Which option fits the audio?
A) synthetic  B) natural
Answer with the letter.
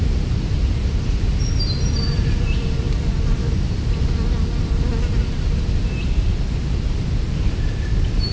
B